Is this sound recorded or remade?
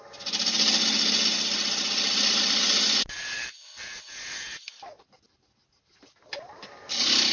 recorded